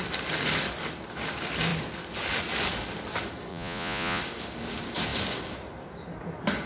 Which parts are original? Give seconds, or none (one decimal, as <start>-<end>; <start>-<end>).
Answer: 0.0-3.5; 4.2-6.7